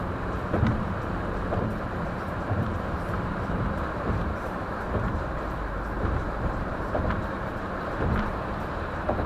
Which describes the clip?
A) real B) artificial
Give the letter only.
B